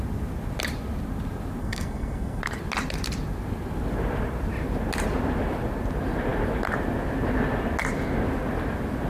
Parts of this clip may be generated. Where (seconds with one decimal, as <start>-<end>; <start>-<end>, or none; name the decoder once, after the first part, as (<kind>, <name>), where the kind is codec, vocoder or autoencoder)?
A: 1.6-2.4 (codec, SNAC)